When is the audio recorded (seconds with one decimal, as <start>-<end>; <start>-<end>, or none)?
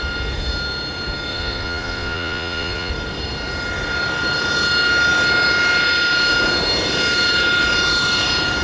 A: 0.0-1.3; 2.9-8.6